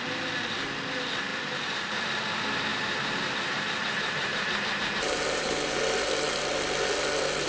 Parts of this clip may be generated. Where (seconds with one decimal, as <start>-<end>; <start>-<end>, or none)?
1.3-2.2; 2.7-5.8

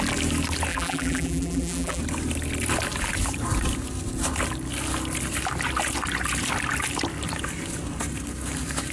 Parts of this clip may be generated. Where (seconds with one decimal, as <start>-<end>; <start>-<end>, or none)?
0.7-2.0

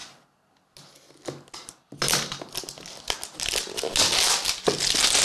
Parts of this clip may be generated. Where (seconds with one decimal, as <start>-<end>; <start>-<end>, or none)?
none

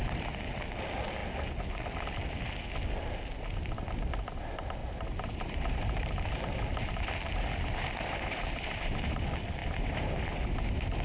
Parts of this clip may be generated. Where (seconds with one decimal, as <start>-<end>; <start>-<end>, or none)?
4.8-6.2; 7.8-9.2; 9.6-11.0

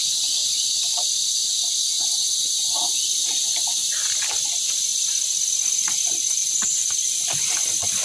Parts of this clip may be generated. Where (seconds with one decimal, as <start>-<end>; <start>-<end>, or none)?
0.4-1.5; 6.4-7.1

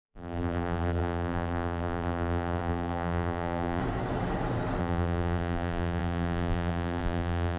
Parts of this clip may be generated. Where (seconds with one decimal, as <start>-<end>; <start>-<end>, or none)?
0.0-3.8; 4.8-7.6

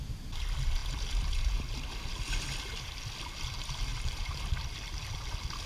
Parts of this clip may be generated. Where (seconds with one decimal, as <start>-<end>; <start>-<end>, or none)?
3.9-4.4

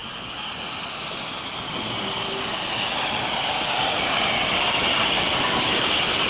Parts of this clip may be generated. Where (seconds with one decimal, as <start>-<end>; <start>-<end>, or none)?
none